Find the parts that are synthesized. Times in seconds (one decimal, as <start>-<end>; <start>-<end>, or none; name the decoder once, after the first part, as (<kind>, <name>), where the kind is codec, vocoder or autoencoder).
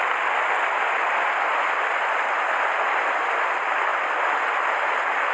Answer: none